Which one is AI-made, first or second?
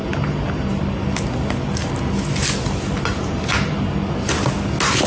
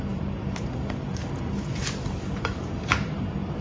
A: second